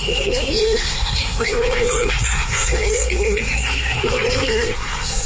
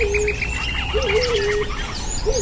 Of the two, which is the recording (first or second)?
second